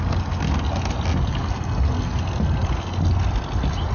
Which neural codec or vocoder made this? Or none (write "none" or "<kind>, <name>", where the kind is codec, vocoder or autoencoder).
none